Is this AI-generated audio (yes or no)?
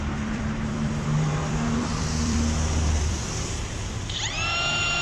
yes